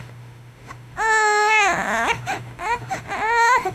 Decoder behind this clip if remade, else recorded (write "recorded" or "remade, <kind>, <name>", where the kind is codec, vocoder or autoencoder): remade, autoencoder, DAC-VAE